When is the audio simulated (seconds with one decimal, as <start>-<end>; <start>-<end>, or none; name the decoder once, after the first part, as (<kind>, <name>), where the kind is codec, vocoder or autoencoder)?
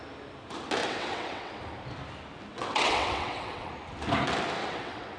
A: 0.8-1.6 (vocoder, WaveNeXt); 2.5-3.7; 4.6-5.2